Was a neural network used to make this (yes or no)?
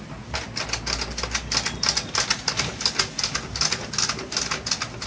no